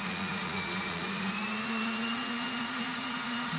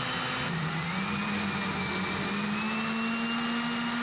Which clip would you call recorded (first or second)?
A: second